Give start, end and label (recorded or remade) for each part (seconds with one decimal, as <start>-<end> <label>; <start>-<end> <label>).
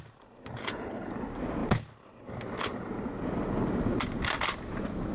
0.0-0.6 recorded; 0.6-1.1 remade; 1.1-5.1 recorded